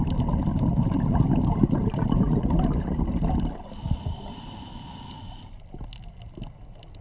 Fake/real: real